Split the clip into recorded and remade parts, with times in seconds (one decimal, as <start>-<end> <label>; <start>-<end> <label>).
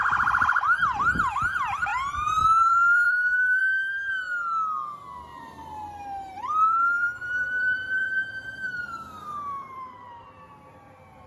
0.0-1.9 recorded; 1.9-3.6 remade; 3.6-5.3 recorded; 5.3-10.4 remade; 10.4-11.3 recorded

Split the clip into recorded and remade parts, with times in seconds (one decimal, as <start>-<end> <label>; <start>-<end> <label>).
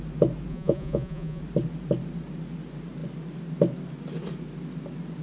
0.0-0.5 recorded; 0.5-1.4 remade; 1.4-5.2 recorded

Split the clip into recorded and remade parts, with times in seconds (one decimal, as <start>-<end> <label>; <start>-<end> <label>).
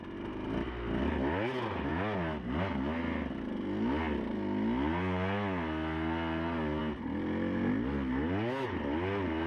0.0-9.5 recorded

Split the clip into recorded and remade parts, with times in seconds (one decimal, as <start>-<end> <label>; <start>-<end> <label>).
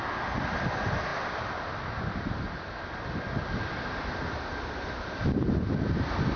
0.0-6.4 recorded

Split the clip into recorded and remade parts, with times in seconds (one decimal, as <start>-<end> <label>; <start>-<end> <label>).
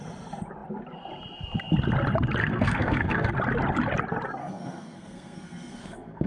0.0-2.4 recorded; 2.4-3.3 remade; 3.3-4.4 recorded; 4.4-6.3 remade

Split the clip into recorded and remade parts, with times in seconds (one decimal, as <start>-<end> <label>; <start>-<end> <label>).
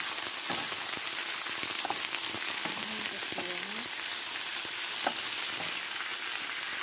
0.0-6.8 recorded